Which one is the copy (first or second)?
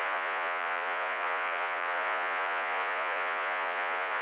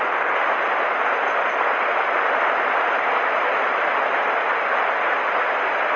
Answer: first